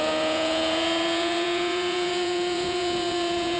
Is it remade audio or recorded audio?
remade